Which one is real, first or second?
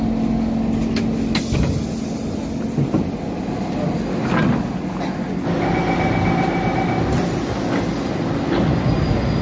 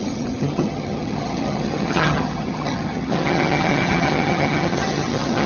first